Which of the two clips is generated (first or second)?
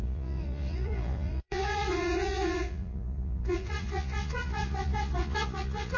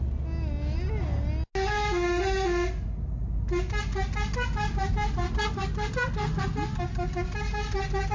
first